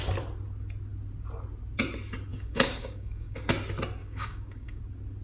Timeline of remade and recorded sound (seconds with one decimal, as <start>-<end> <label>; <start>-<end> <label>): 0.0-2.3 recorded; 2.3-3.5 remade; 3.5-4.0 recorded; 4.0-4.8 remade; 4.8-5.2 recorded